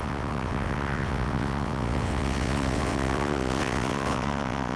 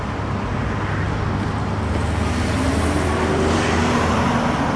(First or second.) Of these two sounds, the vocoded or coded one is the first